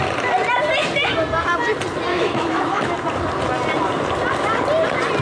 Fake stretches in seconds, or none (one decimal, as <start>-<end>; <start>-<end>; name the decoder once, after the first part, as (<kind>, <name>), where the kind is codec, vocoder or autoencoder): 2.1-2.9 (autoencoder, DAC-VAE)